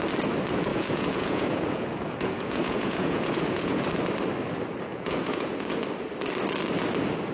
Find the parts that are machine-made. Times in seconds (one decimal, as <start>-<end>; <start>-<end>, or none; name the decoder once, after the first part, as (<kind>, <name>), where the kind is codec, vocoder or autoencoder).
0.7-3.8 (vocoder, Vocos); 4.9-5.8